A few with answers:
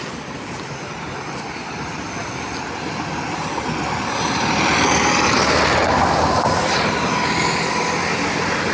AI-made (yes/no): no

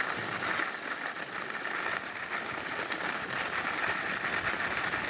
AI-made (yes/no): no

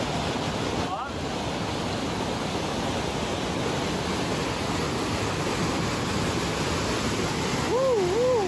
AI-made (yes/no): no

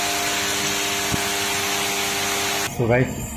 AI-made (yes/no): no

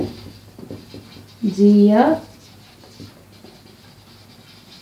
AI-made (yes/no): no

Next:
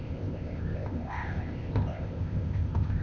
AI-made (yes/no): yes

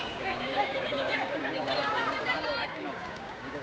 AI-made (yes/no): yes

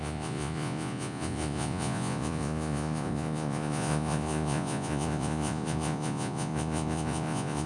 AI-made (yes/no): yes